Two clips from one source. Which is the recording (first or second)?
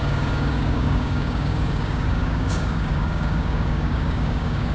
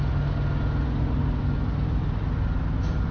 second